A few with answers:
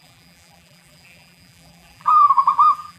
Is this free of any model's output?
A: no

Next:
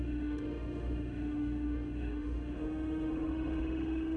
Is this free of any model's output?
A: no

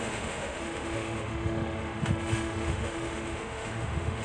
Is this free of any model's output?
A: no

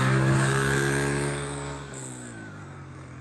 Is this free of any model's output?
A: no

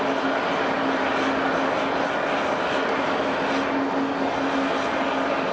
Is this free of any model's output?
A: yes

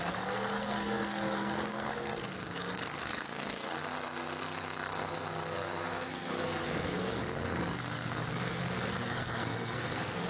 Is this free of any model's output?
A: no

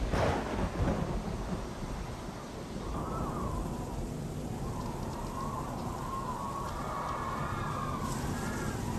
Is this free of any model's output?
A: yes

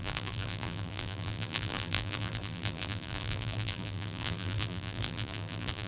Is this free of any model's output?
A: no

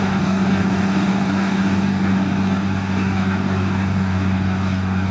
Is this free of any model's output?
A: no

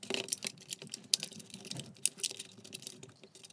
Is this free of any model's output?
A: yes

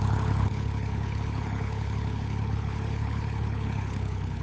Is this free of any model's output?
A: no